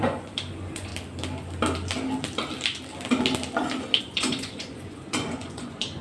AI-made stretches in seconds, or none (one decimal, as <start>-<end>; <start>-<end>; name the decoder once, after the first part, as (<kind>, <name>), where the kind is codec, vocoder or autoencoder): 0.0-0.9 (vocoder, Vocos); 4.0-6.0